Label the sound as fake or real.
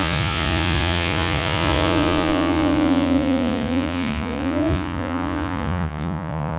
fake